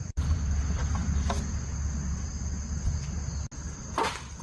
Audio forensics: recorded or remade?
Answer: recorded